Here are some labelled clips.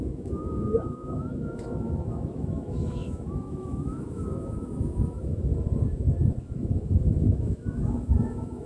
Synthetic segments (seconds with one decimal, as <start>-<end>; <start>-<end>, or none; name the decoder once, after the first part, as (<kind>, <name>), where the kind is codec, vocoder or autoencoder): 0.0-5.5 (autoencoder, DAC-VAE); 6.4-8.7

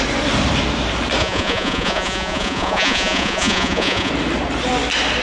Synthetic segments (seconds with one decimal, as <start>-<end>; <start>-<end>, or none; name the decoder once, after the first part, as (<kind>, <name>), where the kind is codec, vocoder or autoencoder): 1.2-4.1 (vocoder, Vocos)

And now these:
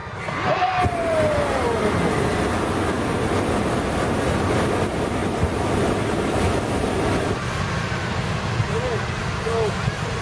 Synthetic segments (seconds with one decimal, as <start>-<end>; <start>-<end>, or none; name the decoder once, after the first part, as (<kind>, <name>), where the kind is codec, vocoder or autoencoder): 5.2-8.2 (vocoder, BigVGAN v2)